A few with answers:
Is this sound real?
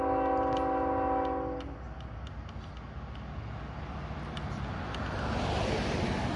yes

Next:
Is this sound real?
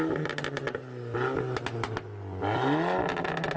yes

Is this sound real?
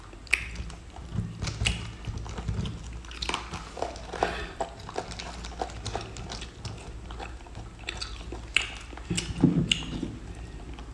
yes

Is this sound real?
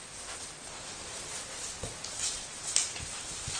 yes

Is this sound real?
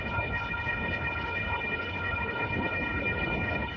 no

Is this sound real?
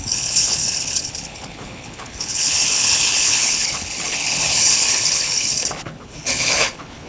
no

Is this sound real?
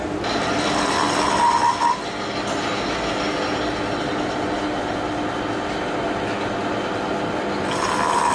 yes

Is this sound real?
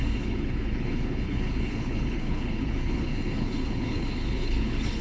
no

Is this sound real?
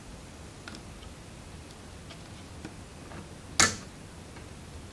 yes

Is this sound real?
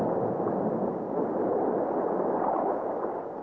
yes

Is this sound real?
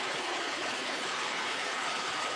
no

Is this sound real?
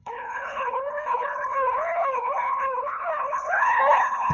no